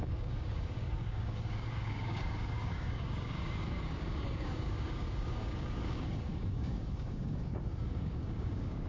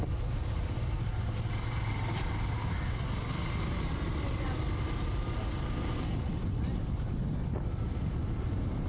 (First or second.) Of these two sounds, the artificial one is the first